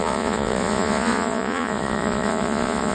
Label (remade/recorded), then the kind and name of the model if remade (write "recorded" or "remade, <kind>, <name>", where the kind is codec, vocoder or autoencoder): remade, vocoder, Vocos